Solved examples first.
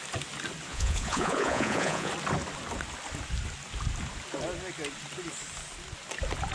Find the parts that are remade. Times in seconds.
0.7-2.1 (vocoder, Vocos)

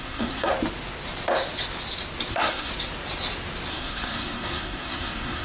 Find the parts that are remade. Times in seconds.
0.0-0.5 (codec, SNAC); 2.3-2.7; 3.7-5.4